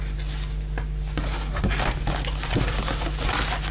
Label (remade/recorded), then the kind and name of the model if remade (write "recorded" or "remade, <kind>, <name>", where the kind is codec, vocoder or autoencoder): recorded